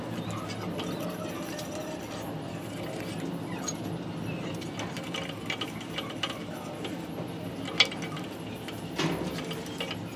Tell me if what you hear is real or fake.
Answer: real